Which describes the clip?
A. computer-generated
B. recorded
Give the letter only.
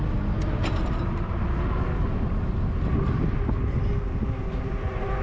B